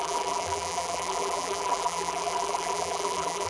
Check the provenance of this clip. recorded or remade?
remade